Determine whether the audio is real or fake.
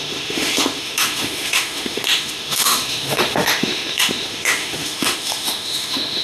fake